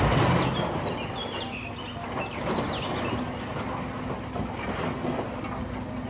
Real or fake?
real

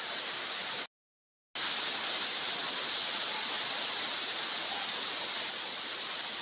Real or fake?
real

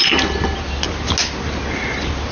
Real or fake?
real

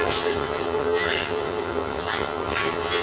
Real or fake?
fake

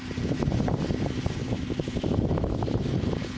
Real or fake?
real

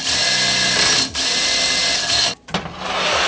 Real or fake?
real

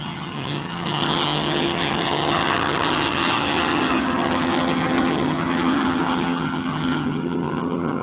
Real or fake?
fake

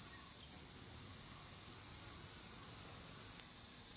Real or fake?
real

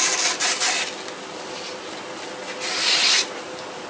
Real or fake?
real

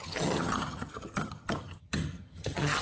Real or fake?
fake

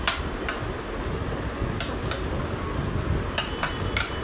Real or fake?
real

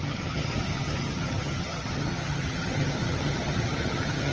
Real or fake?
fake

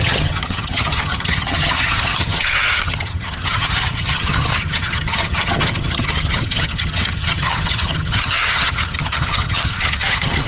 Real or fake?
fake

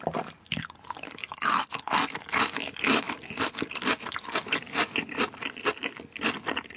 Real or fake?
real